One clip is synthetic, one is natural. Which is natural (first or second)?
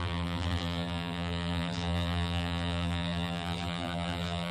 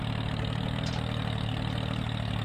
second